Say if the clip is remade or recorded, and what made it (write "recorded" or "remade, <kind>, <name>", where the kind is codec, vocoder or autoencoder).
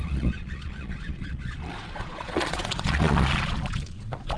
remade, vocoder, Vocos